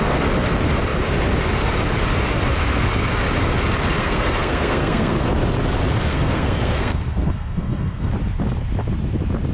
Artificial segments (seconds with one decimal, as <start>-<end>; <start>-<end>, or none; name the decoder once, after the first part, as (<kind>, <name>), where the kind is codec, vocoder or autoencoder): 4.0-5.3 (codec, SNAC); 6.1-8.1